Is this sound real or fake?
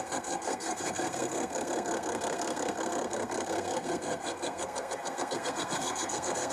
fake